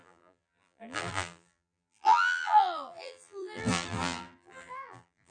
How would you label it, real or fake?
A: fake